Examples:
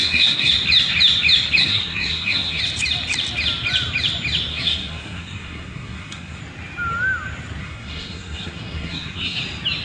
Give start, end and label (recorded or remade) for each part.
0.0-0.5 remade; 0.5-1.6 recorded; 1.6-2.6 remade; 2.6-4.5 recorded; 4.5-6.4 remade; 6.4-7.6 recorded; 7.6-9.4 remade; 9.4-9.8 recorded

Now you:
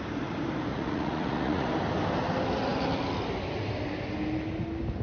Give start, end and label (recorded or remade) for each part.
0.0-0.7 recorded; 0.7-1.7 remade; 1.7-5.0 recorded

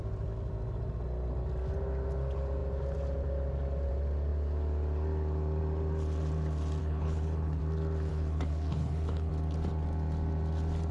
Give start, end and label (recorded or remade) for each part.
0.0-6.8 recorded; 6.8-7.6 remade; 7.6-8.1 recorded; 8.1-9.3 remade; 9.3-10.9 recorded

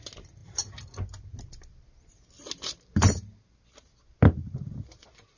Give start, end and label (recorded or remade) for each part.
0.0-5.4 recorded